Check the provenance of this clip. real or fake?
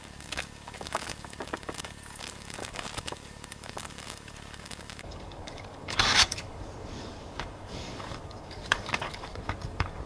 fake